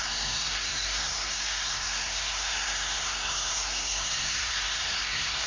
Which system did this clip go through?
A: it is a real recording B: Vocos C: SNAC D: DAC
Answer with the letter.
C